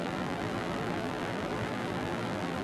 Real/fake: fake